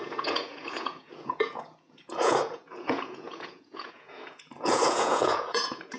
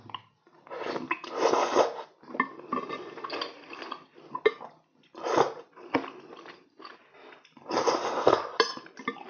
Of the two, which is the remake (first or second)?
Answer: first